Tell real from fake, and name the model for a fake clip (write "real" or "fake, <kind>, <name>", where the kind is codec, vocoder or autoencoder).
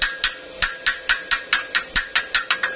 real